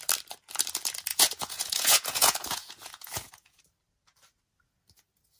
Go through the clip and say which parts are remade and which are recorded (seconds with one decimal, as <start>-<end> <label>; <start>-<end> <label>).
0.0-1.1 recorded; 1.1-3.6 remade; 3.6-5.4 recorded

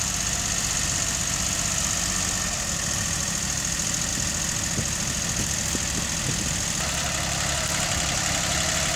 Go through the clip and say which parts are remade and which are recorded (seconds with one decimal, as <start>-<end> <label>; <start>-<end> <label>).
0.0-9.0 recorded